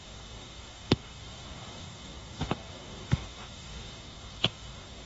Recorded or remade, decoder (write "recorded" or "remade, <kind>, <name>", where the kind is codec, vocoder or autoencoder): remade, codec, DAC